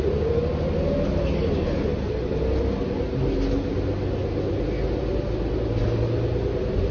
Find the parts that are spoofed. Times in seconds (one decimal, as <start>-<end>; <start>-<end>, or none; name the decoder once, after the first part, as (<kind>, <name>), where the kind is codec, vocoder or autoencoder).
none

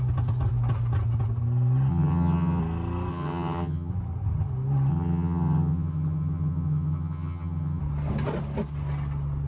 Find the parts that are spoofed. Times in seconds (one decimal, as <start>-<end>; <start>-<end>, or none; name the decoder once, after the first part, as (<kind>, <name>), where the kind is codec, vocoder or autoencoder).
1.9-2.6 (vocoder, HiFi-GAN); 3.1-3.9; 4.9-7.8